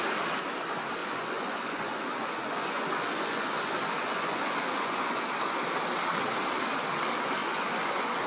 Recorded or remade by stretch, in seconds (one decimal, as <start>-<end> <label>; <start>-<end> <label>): 0.0-1.0 recorded; 1.0-5.2 remade; 5.2-7.4 recorded; 7.4-8.3 remade